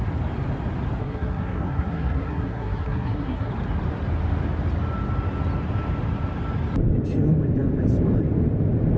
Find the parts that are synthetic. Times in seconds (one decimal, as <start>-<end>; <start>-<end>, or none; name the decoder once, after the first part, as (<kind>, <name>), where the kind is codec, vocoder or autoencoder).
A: 1.0-3.5 (codec, SNAC)